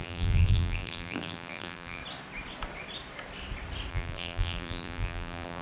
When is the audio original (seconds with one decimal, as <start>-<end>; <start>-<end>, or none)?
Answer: 2.0-3.9

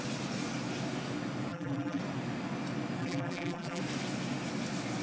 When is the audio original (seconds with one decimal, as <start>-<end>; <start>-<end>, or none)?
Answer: 0.0-1.5; 2.0-3.0; 3.8-5.0